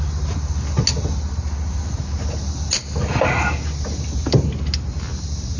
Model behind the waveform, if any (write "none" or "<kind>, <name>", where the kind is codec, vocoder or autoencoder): none